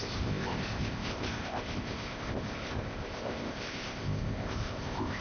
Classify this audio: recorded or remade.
remade